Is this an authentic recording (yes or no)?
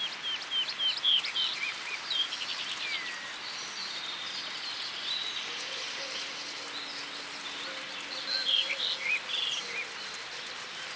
yes